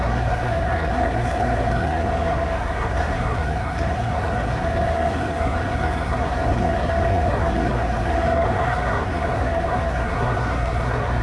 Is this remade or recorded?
remade